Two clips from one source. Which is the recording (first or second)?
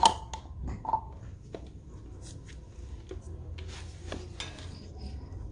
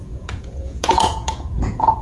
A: first